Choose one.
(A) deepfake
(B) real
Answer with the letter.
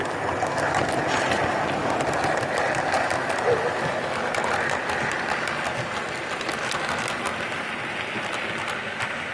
B